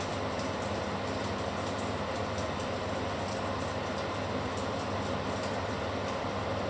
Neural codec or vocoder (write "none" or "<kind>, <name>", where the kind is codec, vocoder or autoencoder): none